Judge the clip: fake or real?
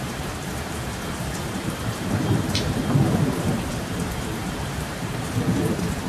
fake